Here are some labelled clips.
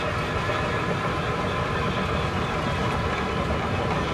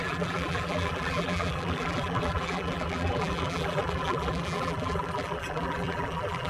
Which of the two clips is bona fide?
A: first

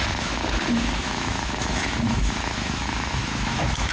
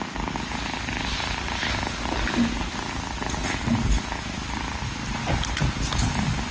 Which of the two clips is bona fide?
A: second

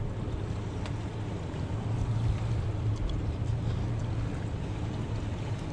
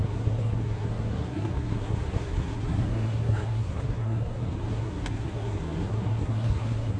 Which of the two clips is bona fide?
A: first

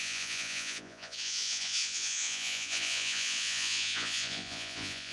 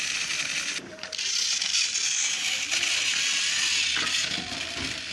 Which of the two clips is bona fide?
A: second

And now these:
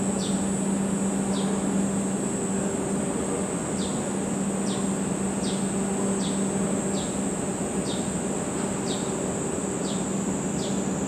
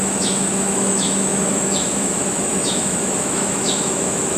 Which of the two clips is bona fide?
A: first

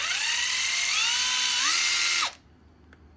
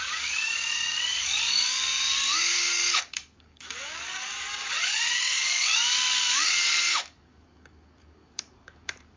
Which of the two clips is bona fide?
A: first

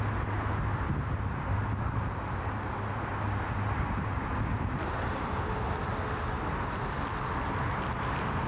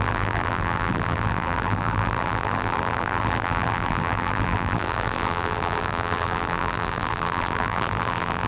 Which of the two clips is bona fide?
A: first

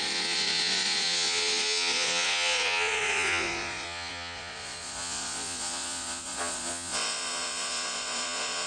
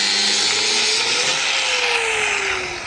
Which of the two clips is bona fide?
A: second